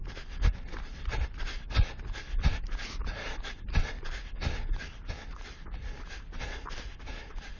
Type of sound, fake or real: real